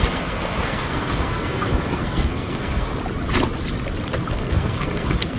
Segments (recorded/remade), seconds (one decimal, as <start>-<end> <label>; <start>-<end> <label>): 0.0-2.9 remade; 2.9-4.3 recorded; 4.3-5.4 remade